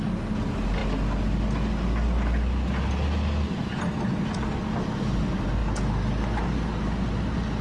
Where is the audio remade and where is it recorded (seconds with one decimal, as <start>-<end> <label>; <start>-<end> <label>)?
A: 0.0-7.6 recorded